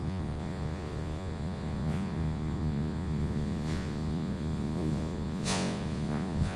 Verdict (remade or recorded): remade